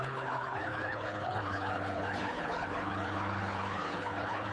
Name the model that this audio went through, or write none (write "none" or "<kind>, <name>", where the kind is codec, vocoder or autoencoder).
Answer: codec, HILCodec